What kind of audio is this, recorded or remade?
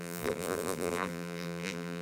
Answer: remade